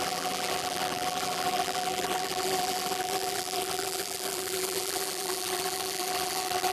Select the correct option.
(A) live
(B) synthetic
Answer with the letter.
B